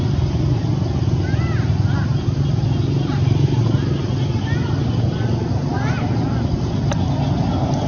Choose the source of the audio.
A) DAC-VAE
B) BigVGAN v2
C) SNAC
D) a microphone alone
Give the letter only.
D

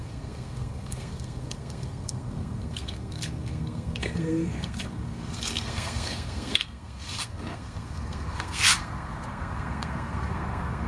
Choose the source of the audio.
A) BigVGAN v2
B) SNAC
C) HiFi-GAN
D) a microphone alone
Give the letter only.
B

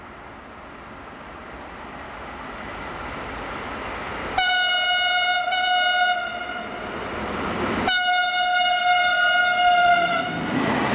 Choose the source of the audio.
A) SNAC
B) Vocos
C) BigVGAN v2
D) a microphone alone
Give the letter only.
D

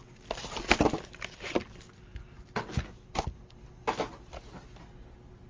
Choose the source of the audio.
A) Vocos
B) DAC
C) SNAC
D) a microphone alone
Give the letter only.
D